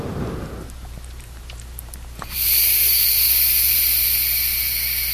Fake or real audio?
fake